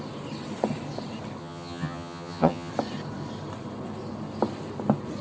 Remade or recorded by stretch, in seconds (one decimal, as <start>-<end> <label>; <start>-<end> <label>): 0.0-1.4 recorded; 1.4-2.7 remade; 2.7-5.2 recorded